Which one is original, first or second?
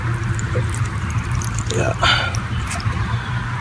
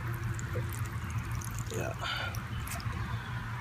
second